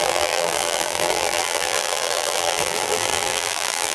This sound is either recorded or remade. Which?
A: remade